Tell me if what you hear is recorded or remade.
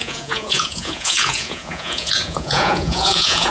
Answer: remade